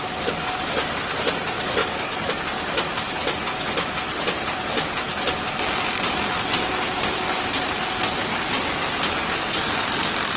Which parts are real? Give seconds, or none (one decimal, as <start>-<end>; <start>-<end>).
0.0-1.8; 2.3-10.4